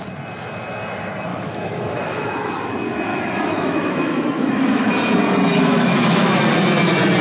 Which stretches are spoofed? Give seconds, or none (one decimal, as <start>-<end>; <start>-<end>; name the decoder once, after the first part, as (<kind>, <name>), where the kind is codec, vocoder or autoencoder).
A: 1.3-2.7 (autoencoder, DAC-VAE); 3.1-4.9; 5.5-6.4